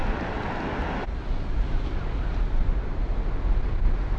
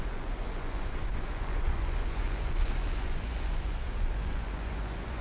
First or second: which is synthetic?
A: second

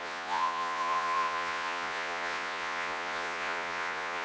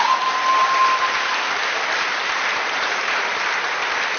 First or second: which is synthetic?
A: first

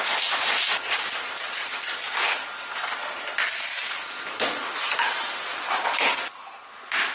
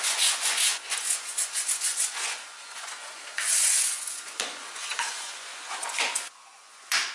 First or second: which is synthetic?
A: second